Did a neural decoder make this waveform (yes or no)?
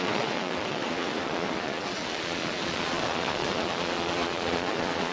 yes